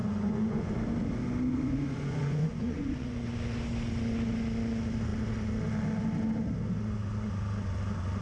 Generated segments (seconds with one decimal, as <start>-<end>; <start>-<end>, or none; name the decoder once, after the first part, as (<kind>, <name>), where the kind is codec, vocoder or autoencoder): 0.0-0.7 (vocoder, Vocos); 1.5-3.2